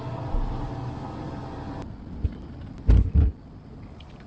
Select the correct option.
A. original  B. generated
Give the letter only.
A